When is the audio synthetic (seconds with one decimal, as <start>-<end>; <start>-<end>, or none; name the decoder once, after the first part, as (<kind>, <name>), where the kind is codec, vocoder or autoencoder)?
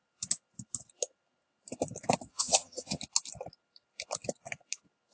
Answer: 2.3-3.0 (vocoder, HiFi-GAN)